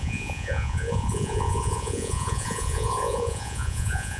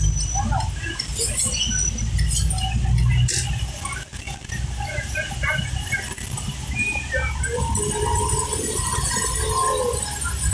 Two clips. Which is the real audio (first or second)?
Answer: second